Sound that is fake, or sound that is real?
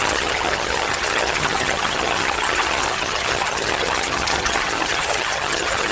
fake